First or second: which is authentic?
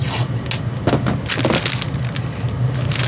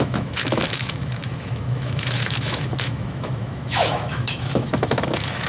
first